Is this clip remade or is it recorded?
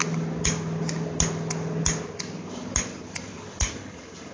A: recorded